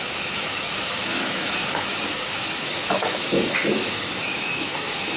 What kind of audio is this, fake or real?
fake